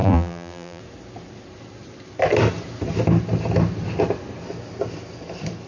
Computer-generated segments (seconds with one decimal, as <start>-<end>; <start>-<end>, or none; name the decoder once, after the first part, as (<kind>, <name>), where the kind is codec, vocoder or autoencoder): 0.0-0.8 (vocoder, BigVGAN v2)